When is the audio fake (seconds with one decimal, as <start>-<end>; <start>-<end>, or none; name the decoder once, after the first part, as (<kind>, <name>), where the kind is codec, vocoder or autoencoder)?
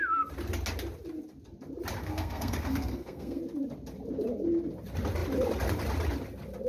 2.0-3.4 (codec, SNAC)